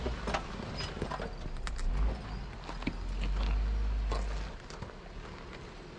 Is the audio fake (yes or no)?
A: no